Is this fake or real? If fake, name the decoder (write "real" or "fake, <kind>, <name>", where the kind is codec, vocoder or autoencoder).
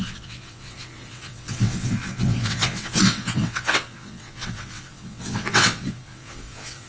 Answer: fake, vocoder, WaveNeXt